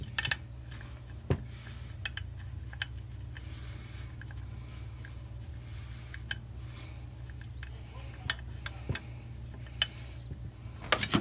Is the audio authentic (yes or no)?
yes